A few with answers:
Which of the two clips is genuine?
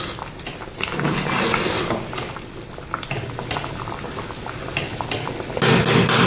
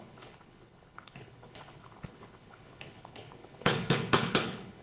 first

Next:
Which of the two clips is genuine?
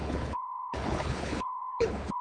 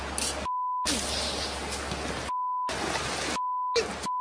second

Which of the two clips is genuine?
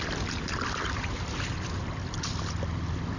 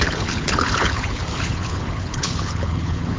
first